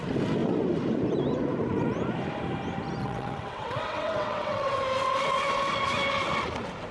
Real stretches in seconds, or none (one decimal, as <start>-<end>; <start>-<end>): 0.0-3.0; 4.8-6.9